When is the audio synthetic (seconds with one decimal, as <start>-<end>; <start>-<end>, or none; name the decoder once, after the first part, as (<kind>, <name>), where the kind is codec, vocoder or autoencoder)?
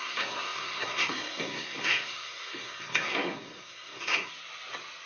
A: 0.0-4.3 (codec, SNAC)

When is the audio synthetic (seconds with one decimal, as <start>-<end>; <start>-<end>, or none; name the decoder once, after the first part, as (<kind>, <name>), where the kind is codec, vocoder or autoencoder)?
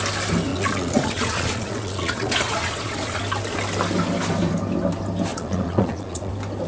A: 0.5-3.2 (vocoder, Vocos); 5.3-6.3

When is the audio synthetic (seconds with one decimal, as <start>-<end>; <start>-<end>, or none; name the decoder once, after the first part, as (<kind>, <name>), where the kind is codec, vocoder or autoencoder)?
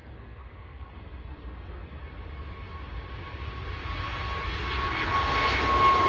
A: 0.0-2.0 (codec, SNAC)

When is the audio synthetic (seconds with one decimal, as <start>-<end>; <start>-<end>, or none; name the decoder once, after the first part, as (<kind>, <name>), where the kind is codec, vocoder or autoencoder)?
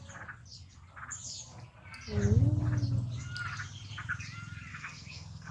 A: 4.7-5.5 (codec, SNAC)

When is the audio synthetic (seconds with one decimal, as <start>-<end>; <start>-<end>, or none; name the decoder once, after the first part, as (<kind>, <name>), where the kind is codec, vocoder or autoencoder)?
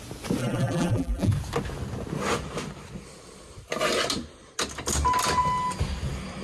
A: 0.4-1.3 (vocoder, BigVGAN v2)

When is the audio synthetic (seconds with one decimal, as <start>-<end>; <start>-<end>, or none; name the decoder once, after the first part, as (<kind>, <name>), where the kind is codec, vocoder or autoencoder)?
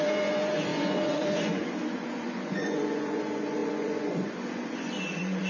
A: 0.0-5.5 (vocoder, Vocos)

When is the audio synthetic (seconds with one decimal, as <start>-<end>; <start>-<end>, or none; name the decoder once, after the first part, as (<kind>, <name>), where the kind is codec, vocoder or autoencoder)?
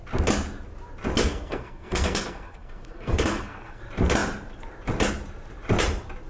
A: 1.2-3.8 (codec, SNAC)